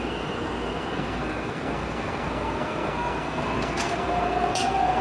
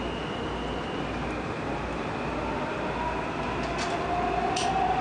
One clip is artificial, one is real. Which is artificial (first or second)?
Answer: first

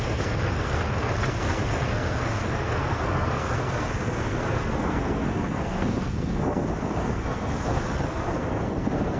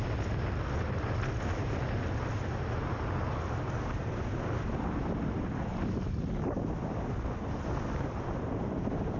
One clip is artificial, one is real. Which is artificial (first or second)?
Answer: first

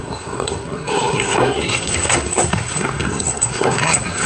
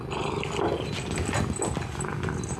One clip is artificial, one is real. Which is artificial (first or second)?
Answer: first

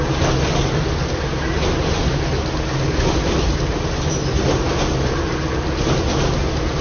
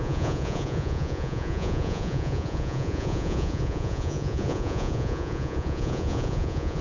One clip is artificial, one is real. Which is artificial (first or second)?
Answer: second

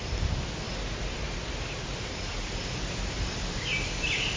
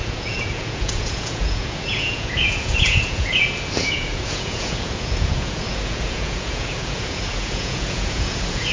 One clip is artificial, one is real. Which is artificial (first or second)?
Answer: second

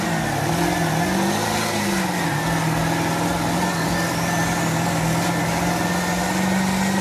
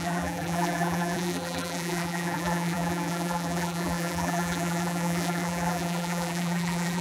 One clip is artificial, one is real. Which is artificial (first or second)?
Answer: second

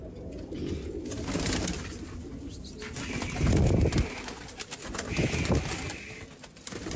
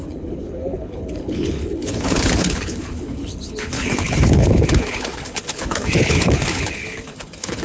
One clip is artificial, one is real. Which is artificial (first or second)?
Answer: second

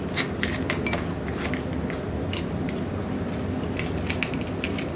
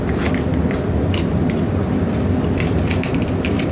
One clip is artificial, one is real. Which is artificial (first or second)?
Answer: second